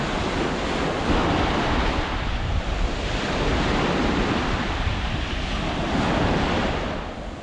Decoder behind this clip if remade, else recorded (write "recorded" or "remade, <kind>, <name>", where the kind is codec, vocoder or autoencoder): recorded